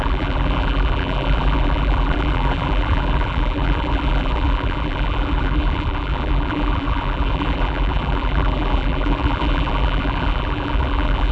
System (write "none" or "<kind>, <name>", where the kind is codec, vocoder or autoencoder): vocoder, BigVGAN v2